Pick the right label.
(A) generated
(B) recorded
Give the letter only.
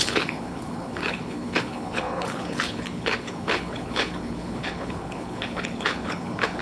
A